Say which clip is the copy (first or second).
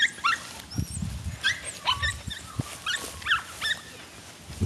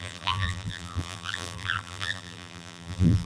second